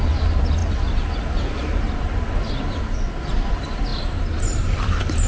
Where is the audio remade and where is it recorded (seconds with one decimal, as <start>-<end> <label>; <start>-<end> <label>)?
0.0-5.3 recorded